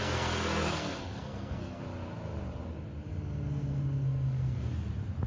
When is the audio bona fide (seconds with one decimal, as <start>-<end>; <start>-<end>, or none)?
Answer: 1.8-3.1; 4.7-5.3